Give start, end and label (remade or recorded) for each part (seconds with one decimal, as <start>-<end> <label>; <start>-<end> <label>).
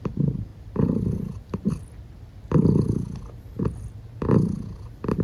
0.0-5.2 recorded